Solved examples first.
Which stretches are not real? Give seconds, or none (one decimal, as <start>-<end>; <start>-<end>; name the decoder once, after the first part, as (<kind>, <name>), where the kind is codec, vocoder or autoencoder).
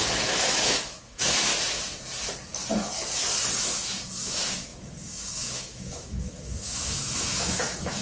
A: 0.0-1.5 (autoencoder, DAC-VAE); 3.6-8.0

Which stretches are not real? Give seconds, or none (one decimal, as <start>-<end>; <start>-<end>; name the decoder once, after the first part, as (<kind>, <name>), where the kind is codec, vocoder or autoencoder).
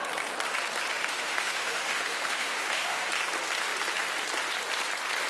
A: 0.9-3.1 (autoencoder, DAC-VAE)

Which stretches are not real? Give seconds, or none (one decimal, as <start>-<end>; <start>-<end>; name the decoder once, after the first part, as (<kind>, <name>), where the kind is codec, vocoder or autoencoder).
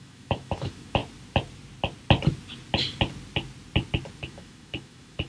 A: 0.0-1.0 (autoencoder, DAC-VAE); 4.2-5.3